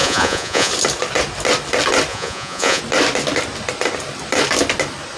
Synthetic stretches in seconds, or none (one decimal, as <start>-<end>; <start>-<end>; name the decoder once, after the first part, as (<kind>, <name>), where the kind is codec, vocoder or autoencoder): 0.0-0.7 (vocoder, Vocos); 2.1-2.8